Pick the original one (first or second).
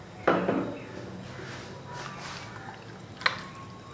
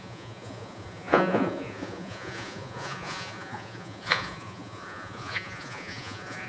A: first